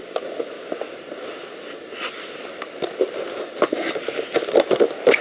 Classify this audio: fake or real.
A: real